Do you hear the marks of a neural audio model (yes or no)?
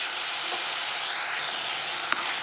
no